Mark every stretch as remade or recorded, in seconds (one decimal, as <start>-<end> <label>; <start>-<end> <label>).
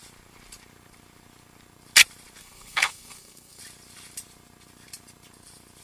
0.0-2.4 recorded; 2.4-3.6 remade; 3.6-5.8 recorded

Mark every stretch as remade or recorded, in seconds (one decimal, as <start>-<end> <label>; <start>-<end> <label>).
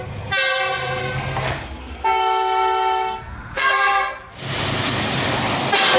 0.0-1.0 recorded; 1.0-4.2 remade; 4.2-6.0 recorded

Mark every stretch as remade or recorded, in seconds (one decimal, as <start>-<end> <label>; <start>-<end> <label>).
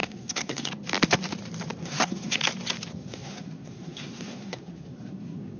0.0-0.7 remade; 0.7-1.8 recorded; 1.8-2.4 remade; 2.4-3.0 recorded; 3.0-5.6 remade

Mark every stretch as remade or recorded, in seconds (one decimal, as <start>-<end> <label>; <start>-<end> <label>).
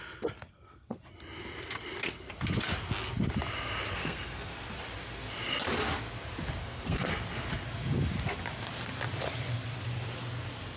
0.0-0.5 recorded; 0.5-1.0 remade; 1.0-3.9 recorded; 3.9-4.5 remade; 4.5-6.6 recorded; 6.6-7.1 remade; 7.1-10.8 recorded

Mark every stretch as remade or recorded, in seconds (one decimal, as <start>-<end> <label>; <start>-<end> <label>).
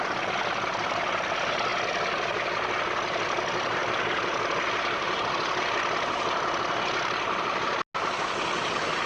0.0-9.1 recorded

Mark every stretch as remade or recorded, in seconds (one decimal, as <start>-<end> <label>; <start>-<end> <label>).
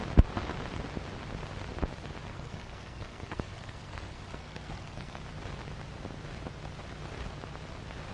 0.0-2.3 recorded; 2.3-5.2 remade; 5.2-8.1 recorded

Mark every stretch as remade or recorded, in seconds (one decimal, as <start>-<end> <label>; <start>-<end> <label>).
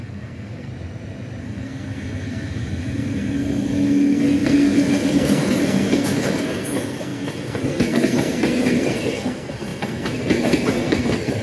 0.0-0.7 remade; 0.7-1.4 recorded; 1.4-11.4 remade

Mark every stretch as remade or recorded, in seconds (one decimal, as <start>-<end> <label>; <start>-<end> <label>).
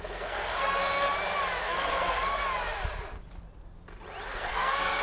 0.0-0.8 remade; 0.8-1.6 recorded; 1.6-2.4 remade; 2.4-4.3 recorded; 4.3-5.0 remade